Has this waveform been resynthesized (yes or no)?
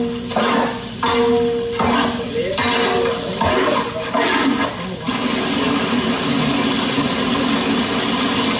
no